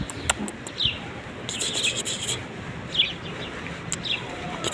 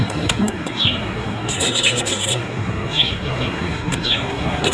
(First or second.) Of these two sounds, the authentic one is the first